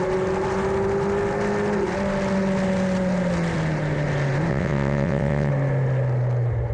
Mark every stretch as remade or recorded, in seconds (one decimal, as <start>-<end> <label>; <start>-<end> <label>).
0.0-4.5 recorded; 4.5-5.5 remade; 5.5-6.7 recorded